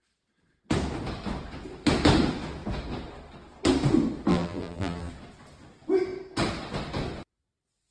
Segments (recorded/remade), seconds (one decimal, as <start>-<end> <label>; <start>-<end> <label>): 0.0-4.3 recorded; 4.3-5.1 remade; 5.1-7.9 recorded